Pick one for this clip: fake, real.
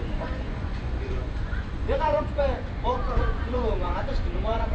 fake